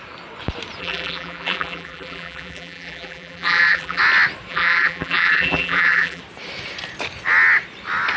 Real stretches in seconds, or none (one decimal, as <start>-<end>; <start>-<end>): 0.0-0.8; 4.0-4.5; 6.2-8.2